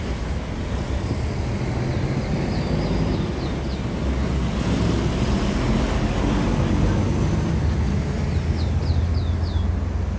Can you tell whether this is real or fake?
real